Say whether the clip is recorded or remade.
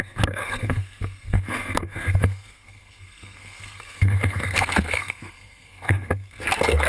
remade